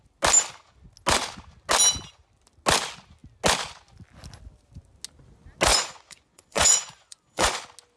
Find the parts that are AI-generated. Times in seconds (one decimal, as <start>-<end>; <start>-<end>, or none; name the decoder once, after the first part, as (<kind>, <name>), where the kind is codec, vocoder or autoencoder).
5.7-7.6 (vocoder, Vocos)